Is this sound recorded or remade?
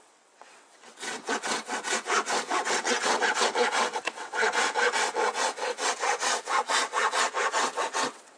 remade